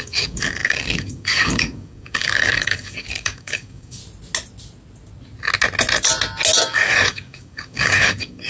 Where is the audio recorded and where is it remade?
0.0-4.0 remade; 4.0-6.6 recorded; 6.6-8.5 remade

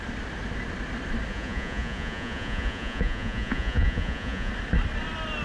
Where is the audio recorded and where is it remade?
0.0-1.3 recorded; 1.3-4.5 remade; 4.5-5.4 recorded

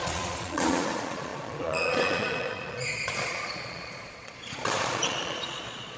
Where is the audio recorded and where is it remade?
0.0-6.0 remade

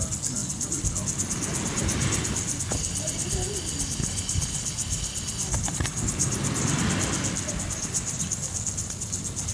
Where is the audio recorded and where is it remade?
0.0-9.5 recorded

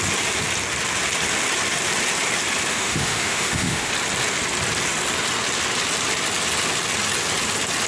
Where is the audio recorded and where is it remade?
0.0-2.7 recorded; 2.7-3.9 remade; 3.9-7.9 recorded

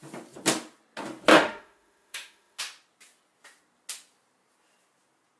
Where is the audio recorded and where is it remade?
0.0-1.3 recorded; 1.3-2.6 remade; 2.6-5.4 recorded

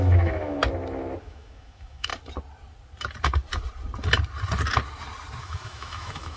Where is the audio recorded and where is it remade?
0.0-0.6 remade; 0.6-1.2 recorded; 1.2-2.1 remade; 2.1-5.4 recorded; 5.4-6.4 remade